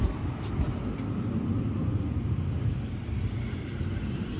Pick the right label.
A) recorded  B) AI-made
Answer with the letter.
A